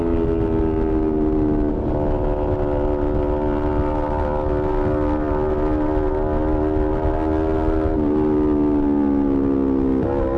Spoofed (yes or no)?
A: no